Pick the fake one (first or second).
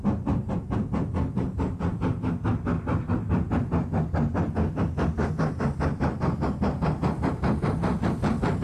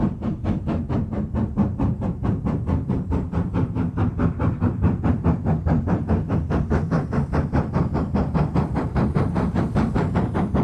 second